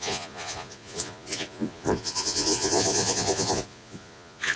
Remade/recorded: remade